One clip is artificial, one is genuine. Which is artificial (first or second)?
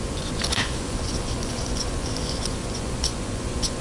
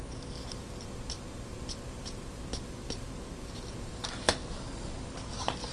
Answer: first